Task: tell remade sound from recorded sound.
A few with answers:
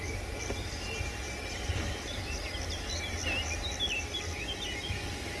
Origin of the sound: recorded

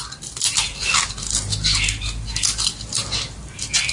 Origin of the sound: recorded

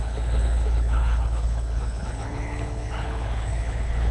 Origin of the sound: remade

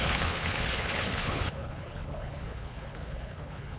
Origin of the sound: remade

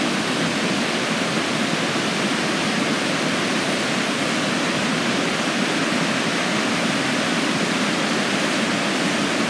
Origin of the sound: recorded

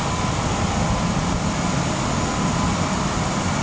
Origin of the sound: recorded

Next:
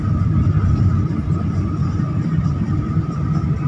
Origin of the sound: recorded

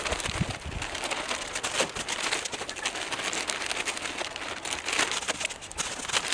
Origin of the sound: recorded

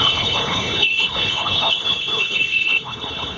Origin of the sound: remade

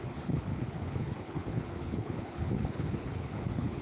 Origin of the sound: remade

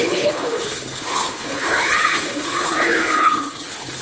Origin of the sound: remade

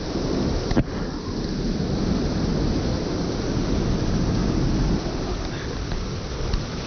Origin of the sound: recorded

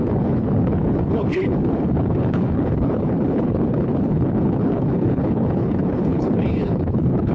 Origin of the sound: remade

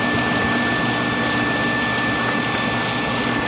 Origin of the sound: recorded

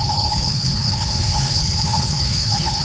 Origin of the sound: remade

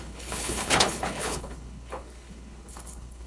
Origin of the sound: remade